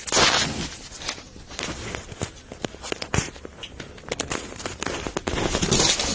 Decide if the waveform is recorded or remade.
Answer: recorded